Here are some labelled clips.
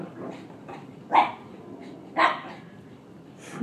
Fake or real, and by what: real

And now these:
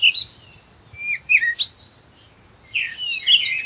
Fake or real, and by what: real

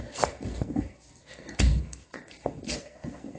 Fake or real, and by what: fake, codec, SNAC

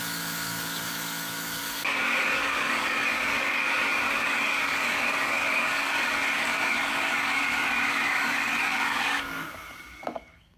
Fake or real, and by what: fake, codec, DAC